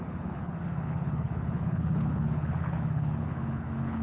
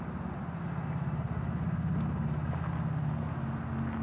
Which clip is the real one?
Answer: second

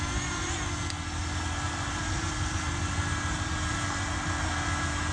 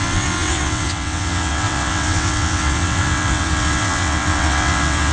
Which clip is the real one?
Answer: first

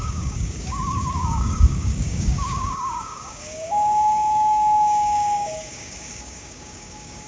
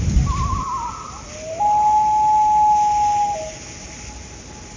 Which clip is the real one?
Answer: second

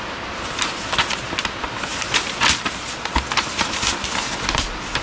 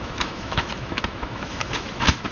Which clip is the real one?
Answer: first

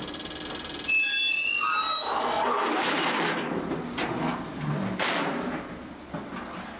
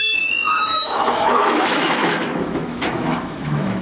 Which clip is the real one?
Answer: first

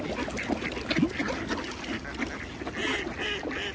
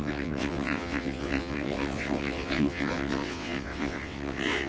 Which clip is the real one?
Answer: first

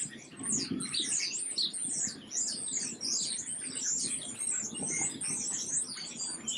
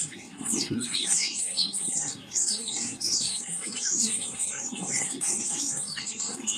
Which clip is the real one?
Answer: first